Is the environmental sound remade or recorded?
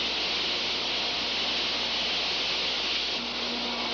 recorded